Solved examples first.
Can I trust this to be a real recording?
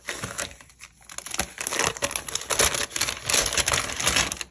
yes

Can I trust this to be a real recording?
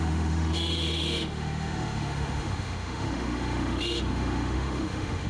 no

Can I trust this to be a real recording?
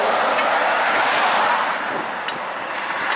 yes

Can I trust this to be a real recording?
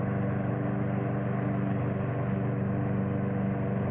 yes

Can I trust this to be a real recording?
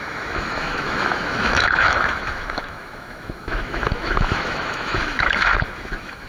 no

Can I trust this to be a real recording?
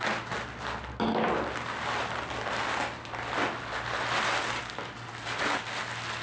yes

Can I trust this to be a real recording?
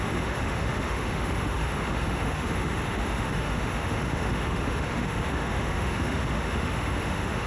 no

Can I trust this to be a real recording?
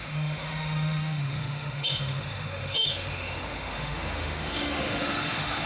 no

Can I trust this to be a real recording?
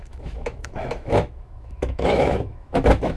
no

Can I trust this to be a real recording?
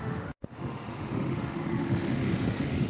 no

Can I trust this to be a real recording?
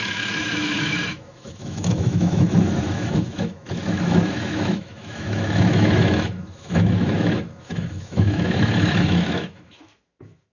no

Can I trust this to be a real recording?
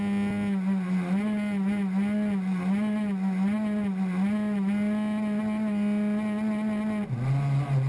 yes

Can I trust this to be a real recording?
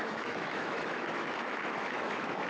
no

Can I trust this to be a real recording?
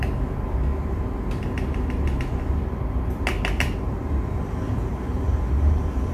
yes